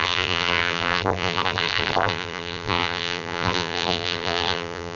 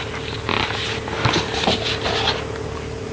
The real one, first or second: second